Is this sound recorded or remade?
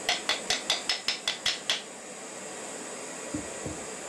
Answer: recorded